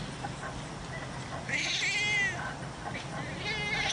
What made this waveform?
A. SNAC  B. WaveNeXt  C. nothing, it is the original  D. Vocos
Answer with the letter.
C